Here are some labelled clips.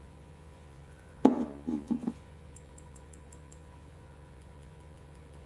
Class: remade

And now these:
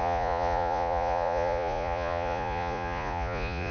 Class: remade